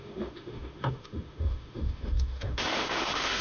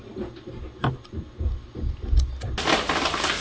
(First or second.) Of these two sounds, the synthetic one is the first